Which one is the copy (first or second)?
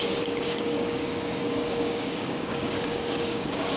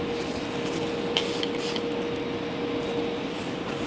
first